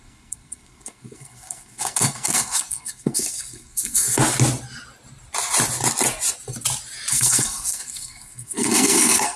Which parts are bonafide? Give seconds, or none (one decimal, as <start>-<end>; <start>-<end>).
4.2-7.1